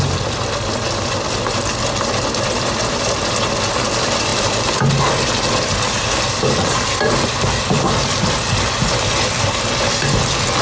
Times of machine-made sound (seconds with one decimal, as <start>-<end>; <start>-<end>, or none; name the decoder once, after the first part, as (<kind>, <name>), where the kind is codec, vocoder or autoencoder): none